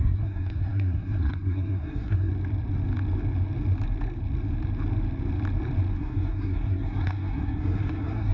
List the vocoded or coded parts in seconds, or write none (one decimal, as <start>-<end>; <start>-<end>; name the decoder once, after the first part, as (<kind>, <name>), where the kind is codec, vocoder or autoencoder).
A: 0.0-2.3 (codec, SNAC); 5.9-8.3